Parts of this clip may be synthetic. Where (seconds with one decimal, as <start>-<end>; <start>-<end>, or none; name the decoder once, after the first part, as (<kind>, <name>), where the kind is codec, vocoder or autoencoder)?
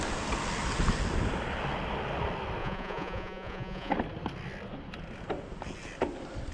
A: 2.6-3.9 (vocoder, Vocos)